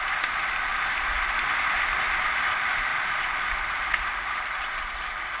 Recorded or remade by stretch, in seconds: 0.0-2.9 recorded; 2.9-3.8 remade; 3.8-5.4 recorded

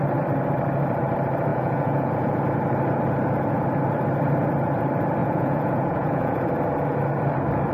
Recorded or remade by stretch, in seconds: 0.0-1.5 recorded; 1.5-2.4 remade; 2.4-5.2 recorded; 5.2-6.4 remade; 6.4-7.7 recorded

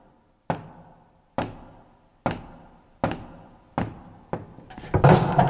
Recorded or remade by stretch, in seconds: 0.0-5.5 recorded

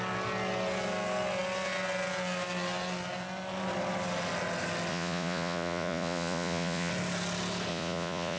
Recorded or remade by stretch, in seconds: 0.0-4.9 recorded; 4.9-6.9 remade; 6.9-7.7 recorded; 7.7-8.4 remade

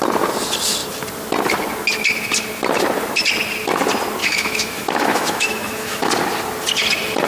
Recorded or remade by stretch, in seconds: 0.0-4.2 recorded; 4.2-6.1 remade; 6.1-7.3 recorded